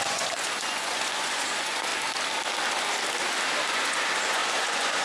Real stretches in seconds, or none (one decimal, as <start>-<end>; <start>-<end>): 1.9-3.7

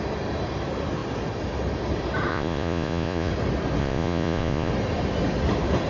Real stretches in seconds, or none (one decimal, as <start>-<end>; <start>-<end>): 0.0-2.3; 3.3-3.8; 4.7-5.9